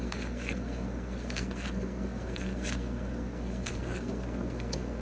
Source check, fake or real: fake